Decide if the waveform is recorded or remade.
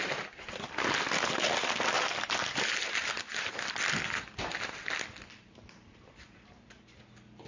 remade